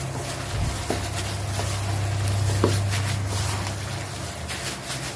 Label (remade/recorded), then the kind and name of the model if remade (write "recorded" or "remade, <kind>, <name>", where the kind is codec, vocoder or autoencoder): recorded